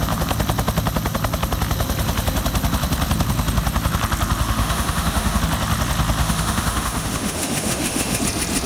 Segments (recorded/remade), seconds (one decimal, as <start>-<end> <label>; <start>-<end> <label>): 0.0-4.6 recorded; 4.6-5.4 remade; 5.4-6.2 recorded; 6.2-8.2 remade; 8.2-8.7 recorded